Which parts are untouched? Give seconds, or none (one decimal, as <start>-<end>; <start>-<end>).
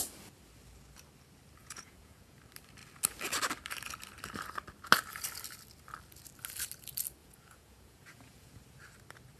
0.0-1.6; 2.4-7.2; 8.6-9.4